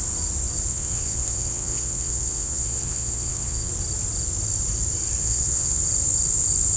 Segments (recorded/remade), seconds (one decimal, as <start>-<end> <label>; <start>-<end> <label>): 0.0-0.7 recorded; 0.7-3.7 remade; 3.7-5.2 recorded; 5.2-5.8 remade; 5.8-6.8 recorded